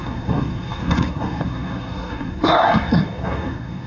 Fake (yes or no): yes